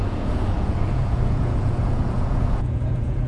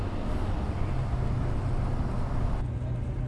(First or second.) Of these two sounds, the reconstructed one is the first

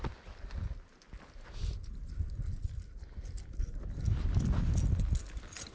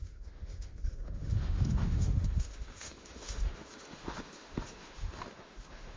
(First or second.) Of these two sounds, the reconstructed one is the second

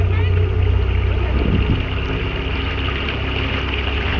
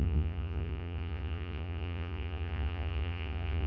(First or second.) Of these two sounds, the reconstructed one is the second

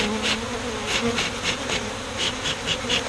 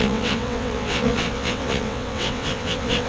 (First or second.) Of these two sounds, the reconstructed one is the second